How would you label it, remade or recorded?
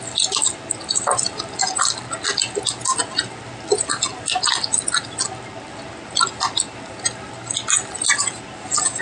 recorded